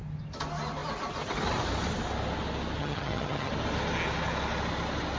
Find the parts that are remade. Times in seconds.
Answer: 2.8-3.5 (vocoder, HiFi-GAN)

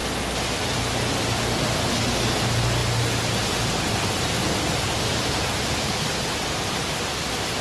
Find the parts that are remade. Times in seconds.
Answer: none

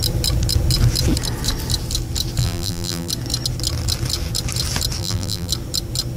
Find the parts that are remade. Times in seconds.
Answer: 2.4-3.1 (vocoder, BigVGAN v2); 5.0-5.5